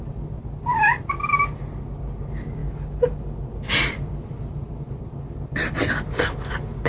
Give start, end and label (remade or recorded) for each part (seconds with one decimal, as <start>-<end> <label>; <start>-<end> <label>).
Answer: 0.0-6.9 recorded